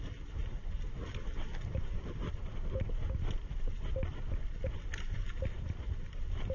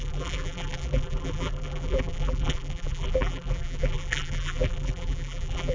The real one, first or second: first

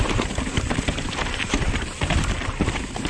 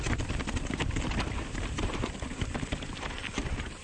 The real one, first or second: second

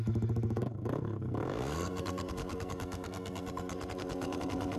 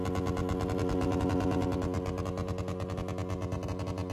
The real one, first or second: second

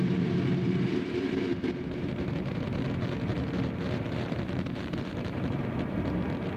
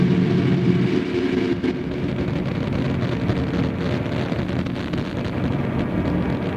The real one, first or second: second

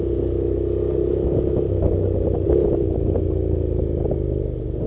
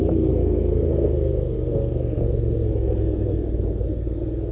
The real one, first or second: first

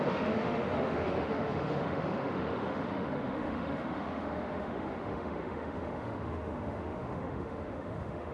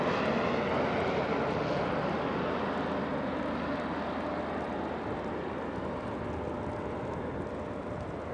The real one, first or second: second